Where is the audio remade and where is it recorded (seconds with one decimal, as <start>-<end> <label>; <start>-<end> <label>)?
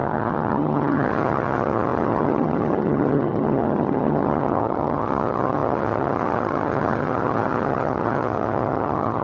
0.0-9.2 remade